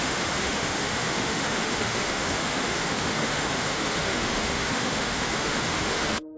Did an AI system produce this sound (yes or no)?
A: yes